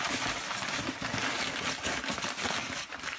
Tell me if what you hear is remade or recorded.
recorded